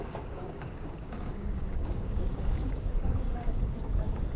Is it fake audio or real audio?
fake